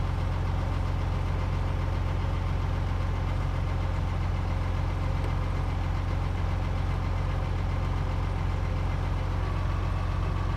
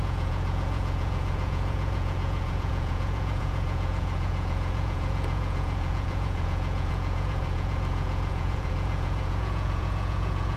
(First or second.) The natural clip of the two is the first